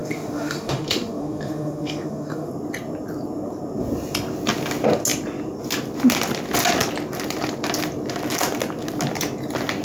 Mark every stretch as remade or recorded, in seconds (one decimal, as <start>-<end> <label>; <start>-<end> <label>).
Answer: 0.0-2.5 remade; 2.5-9.8 recorded